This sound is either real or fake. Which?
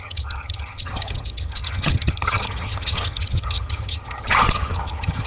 fake